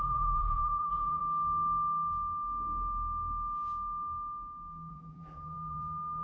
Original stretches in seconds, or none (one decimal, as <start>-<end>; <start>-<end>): 1.2-4.9